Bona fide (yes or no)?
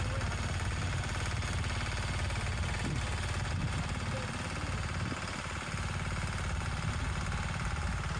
yes